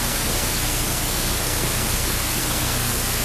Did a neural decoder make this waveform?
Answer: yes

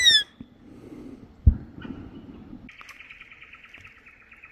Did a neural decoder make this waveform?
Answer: no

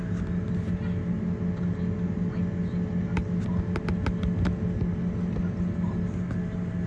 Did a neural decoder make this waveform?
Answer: no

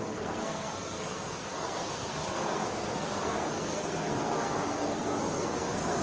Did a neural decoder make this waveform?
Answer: yes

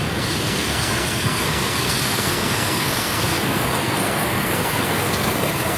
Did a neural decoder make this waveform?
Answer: yes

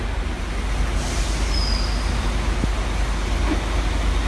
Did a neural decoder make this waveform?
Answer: no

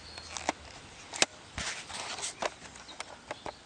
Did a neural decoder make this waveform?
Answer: no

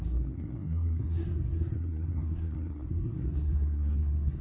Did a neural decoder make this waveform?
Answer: yes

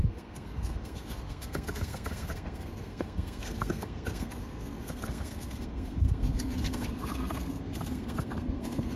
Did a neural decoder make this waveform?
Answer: yes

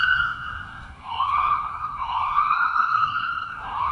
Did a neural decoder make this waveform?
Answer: yes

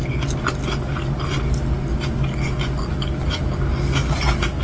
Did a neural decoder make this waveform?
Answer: no